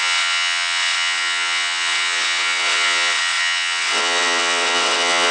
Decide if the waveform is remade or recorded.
remade